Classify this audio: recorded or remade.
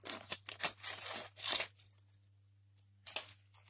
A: recorded